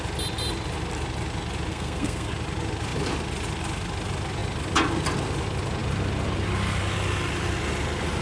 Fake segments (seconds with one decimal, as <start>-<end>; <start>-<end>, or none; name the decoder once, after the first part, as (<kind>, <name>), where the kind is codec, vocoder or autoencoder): 1.7-2.3 (codec, SNAC)